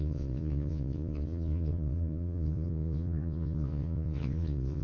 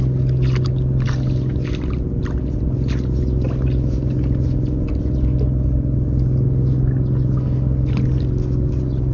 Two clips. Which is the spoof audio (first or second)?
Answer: first